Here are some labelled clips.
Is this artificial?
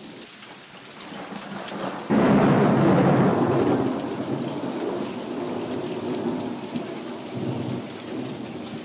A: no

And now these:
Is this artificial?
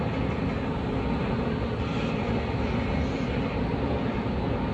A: no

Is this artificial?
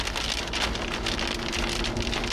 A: no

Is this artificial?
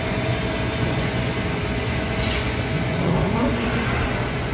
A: yes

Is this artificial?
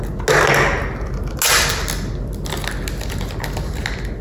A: no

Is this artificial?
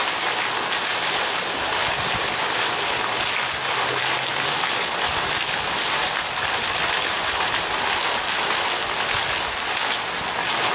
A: no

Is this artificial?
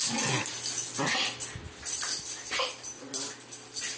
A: no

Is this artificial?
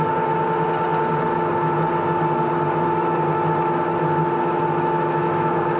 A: no